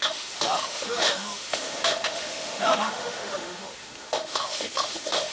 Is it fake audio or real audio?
fake